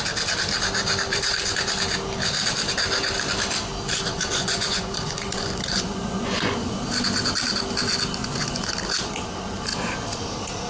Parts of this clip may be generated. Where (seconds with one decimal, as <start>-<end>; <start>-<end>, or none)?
1.1-1.7; 4.1-6.7; 8.2-8.7